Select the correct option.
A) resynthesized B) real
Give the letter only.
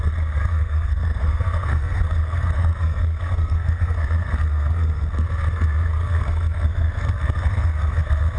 A